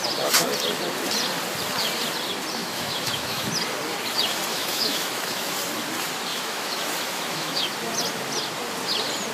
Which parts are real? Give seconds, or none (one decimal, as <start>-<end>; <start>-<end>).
0.0-2.6; 3.5-4.5; 5.5-6.3; 7.7-9.3